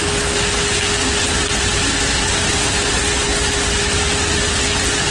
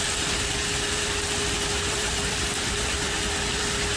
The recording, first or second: first